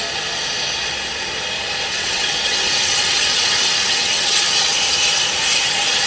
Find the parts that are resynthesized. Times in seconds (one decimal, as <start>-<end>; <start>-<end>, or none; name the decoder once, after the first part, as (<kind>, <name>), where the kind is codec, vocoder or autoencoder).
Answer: 1.9-4.7 (vocoder, WaveNeXt)